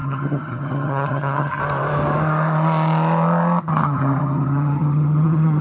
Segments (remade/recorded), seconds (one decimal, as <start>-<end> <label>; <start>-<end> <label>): 0.0-1.6 remade; 1.6-3.7 recorded; 3.7-5.6 remade